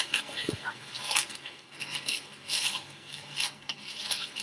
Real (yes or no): no